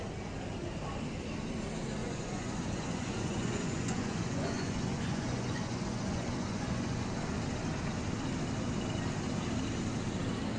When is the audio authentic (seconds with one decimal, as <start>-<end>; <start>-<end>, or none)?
0.0-2.0; 7.1-10.6